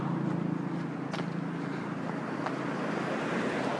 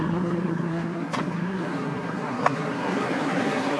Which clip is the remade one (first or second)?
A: second